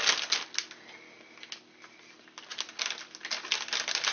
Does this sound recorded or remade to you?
recorded